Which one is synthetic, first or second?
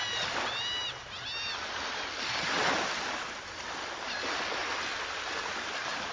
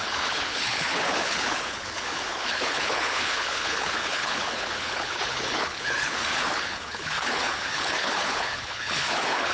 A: second